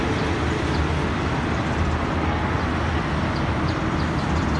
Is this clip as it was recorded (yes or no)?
yes